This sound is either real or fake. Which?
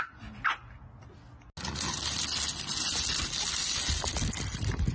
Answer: real